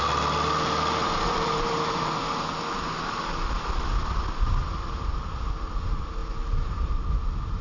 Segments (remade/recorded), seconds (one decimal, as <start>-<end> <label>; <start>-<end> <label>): 0.0-1.0 recorded; 1.0-2.0 remade; 2.0-7.6 recorded